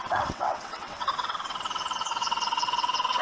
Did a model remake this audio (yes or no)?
yes